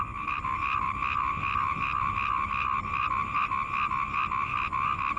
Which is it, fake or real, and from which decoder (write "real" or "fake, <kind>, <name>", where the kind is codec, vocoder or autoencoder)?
real